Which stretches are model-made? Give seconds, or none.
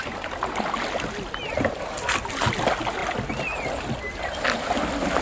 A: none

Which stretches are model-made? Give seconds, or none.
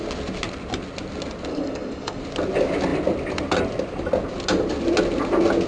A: 1.5-2.2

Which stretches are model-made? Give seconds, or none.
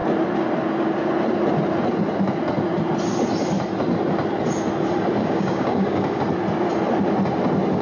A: 5.2-6.2